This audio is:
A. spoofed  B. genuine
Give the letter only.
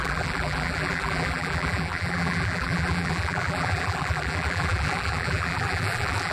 A